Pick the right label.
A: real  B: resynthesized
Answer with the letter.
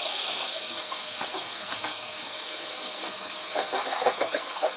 B